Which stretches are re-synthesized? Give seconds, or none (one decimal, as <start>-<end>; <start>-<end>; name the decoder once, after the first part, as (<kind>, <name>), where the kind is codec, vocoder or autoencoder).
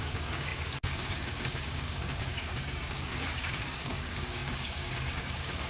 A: 0.0-5.7 (codec, DAC)